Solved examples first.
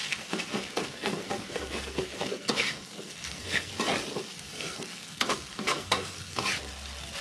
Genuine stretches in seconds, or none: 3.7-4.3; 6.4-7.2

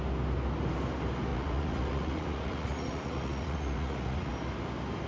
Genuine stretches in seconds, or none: 0.0-1.3; 4.3-5.1